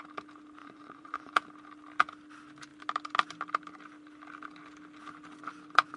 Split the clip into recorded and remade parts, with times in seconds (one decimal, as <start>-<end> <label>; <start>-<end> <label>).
0.0-0.6 recorded; 0.6-1.3 remade; 1.3-6.0 recorded